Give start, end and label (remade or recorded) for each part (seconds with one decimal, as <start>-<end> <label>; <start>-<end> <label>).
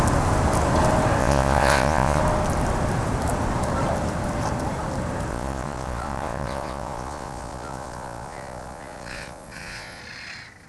0.0-1.2 recorded; 1.2-2.2 remade; 2.2-5.3 recorded; 5.3-10.0 remade; 10.0-10.7 recorded